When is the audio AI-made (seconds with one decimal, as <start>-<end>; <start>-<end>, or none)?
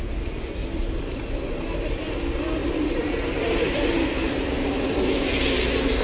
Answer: 0.6-1.2; 2.6-5.2